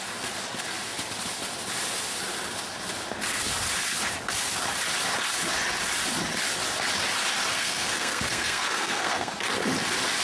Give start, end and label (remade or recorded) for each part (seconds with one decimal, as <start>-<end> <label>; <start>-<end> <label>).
0.0-7.5 recorded; 7.5-9.3 remade; 9.3-10.2 recorded